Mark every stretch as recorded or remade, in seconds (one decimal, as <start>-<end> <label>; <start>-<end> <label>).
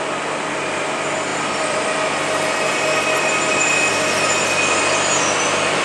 0.0-5.8 recorded